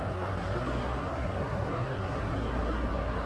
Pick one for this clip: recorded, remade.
remade